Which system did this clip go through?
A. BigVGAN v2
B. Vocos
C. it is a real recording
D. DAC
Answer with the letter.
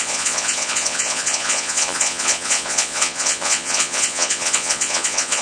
B